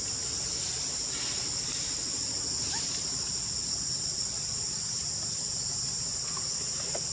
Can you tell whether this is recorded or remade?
recorded